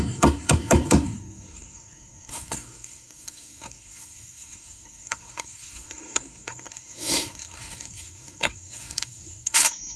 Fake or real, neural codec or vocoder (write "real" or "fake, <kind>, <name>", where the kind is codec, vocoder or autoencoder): fake, codec, SNAC